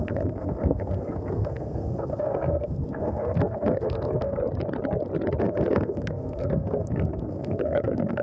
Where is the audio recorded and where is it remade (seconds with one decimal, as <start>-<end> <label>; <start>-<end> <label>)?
0.0-4.4 remade; 4.4-5.4 recorded; 5.4-8.2 remade